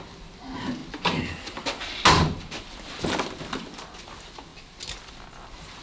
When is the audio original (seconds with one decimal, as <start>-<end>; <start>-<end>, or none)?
0.0-5.8